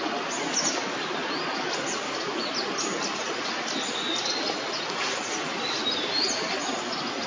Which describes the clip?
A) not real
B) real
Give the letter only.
B